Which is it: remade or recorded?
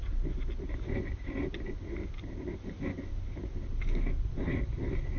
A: recorded